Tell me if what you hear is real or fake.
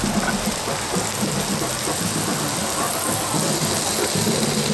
real